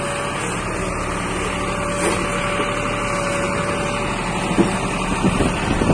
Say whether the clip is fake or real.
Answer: real